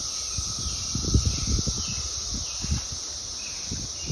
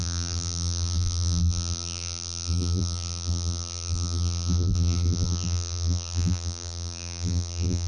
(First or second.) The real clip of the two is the first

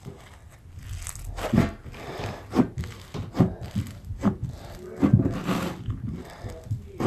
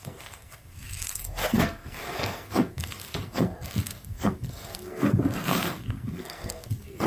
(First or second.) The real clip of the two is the first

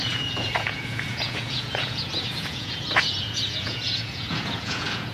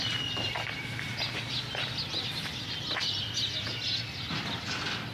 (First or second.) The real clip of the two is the second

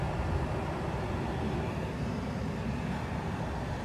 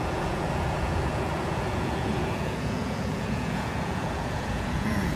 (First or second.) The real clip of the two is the first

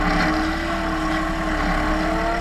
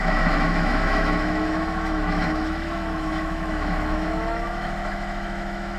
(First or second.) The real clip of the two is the first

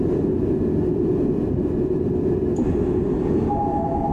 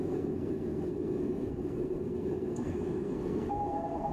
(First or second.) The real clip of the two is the first